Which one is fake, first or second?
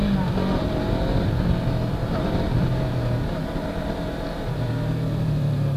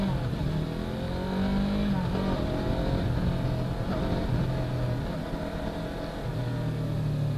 first